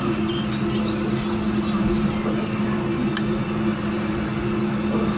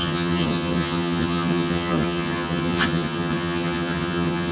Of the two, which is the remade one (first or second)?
second